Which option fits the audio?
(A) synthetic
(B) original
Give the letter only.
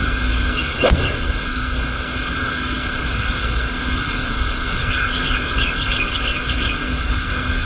A